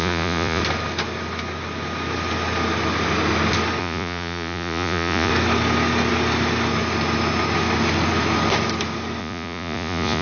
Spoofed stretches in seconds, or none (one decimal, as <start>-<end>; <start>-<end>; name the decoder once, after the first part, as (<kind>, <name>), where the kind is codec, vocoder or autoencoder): 0.0-0.6 (vocoder, Vocos); 3.8-5.3; 9.2-10.2